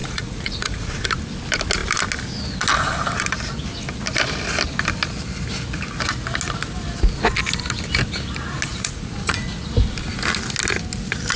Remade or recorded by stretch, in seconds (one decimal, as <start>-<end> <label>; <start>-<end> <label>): 0.0-1.0 remade; 1.0-8.7 recorded; 8.7-9.6 remade; 9.6-11.4 recorded